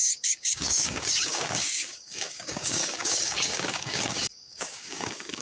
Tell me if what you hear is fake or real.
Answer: fake